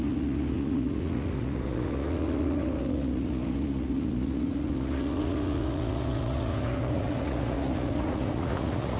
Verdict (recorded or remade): remade